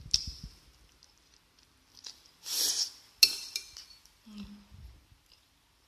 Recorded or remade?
recorded